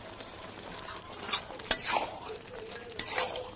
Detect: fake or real fake